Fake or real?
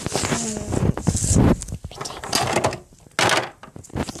real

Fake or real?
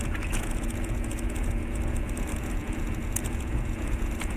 fake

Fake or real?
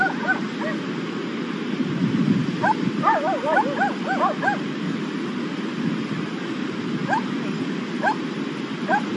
real